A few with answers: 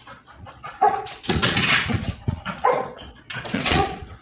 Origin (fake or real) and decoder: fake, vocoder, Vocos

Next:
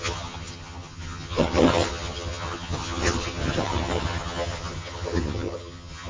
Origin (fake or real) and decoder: fake, vocoder, HiFi-GAN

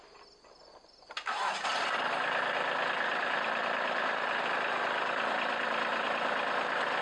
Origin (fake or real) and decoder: real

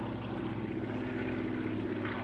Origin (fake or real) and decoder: real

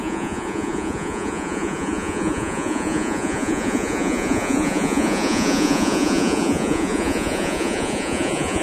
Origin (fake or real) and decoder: fake, vocoder, Vocos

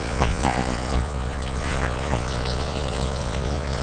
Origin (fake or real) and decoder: fake, vocoder, Vocos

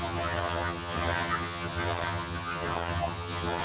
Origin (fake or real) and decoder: fake, vocoder, HiFi-GAN